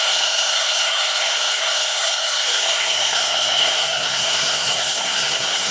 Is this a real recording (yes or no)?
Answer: no